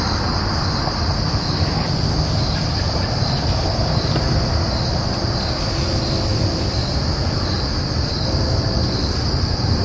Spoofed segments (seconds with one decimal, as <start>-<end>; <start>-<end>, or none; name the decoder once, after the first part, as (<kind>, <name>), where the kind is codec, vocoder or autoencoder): 6.3-7.4 (vocoder, BigVGAN v2)